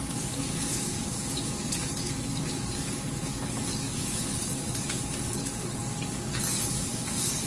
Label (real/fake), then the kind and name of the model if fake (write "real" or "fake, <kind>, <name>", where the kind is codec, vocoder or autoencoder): fake, codec, DAC